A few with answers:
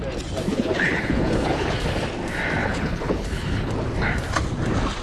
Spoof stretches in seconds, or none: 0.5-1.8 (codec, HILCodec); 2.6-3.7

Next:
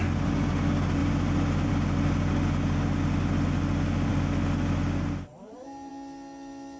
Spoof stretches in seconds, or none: none

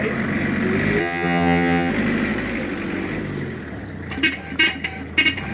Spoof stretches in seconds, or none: 1.0-1.9 (vocoder, HiFi-GAN)

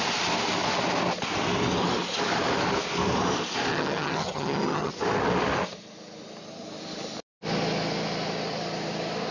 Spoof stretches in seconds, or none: 3.7-4.9 (vocoder, HiFi-GAN)

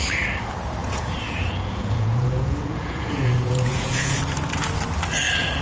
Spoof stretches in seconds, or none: 0.8-4.2 (vocoder, Vocos)

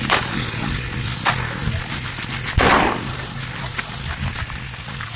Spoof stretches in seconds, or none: none

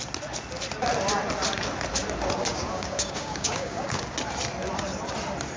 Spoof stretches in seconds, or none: 2.5-4.0 (codec, DAC)

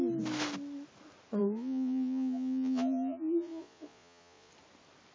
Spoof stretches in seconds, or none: 1.4-4.5 (vocoder, Vocos)